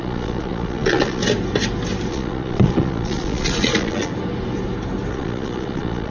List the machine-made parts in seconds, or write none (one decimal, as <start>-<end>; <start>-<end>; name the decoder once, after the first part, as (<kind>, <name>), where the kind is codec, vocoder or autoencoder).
0.0-1.2 (vocoder, Vocos); 2.1-4.1; 5.1-6.1